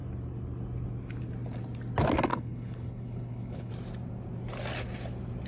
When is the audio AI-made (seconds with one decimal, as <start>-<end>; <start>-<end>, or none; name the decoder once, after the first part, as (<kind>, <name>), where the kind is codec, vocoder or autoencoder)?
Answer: 2.3-3.7 (codec, HILCodec)